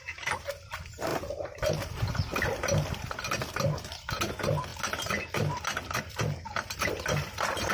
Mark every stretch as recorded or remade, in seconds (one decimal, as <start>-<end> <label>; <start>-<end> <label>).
0.0-7.7 recorded